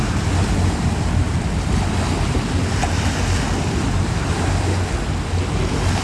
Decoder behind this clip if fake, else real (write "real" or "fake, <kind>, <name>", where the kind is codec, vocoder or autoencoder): real